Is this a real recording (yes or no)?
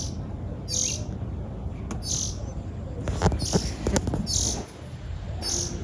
yes